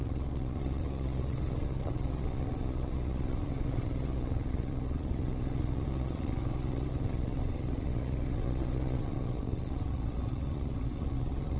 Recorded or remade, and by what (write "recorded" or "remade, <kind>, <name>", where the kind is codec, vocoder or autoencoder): remade, vocoder, Vocos